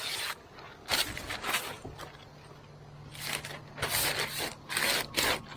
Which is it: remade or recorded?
recorded